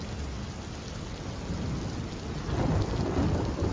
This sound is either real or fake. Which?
real